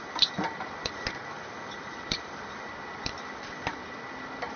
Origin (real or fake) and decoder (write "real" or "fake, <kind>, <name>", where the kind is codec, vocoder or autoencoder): fake, vocoder, BigVGAN v2